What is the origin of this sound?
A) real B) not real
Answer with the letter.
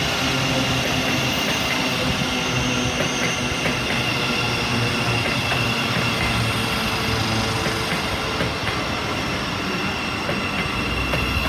A